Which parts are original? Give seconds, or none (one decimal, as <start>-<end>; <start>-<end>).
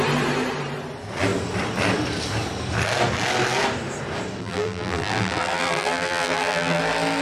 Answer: 0.0-4.4; 6.8-7.2